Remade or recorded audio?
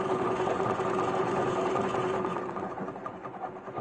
remade